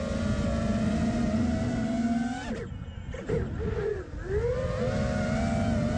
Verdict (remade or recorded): recorded